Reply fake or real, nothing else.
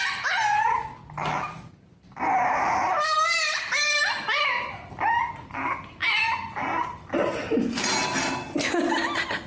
real